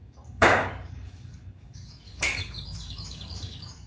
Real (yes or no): no